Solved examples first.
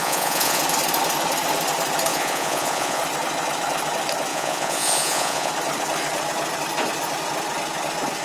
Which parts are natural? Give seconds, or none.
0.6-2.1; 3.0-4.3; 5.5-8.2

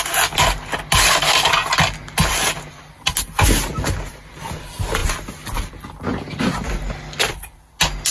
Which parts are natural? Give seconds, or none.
0.0-8.1

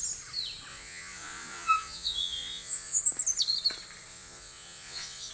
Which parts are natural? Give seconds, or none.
0.0-0.7; 3.0-4.1

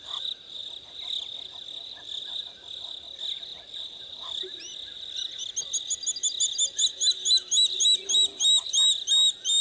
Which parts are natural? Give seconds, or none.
0.0-9.6

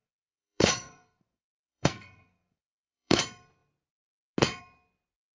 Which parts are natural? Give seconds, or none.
3.2-5.4

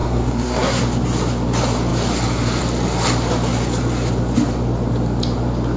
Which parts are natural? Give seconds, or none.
0.8-5.8

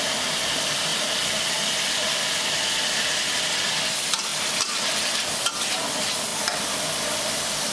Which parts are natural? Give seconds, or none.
none

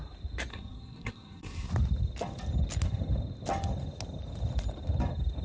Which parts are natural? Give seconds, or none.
0.0-0.5; 1.7-5.4